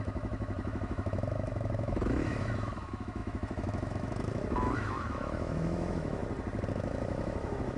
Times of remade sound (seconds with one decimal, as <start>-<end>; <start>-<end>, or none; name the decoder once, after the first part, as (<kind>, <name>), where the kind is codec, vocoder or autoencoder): 0.0-6.2 (autoencoder, DAC-VAE); 6.7-7.8